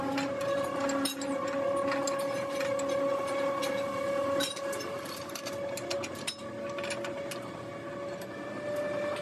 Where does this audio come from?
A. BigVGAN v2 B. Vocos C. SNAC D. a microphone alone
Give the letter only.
D